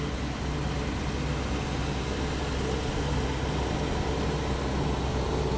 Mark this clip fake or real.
real